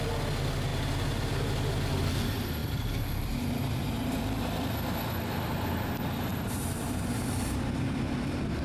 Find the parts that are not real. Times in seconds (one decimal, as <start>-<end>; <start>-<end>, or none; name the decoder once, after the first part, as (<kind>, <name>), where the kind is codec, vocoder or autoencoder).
2.6-4.2 (vocoder, BigVGAN v2); 6.3-7.6